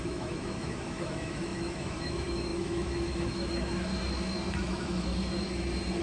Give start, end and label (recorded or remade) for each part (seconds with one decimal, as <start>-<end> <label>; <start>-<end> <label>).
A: 0.0-3.9 remade; 3.9-4.5 recorded; 4.5-5.1 remade; 5.1-6.0 recorded